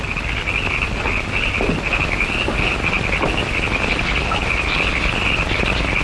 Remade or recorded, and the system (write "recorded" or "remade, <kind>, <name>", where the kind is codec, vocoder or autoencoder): recorded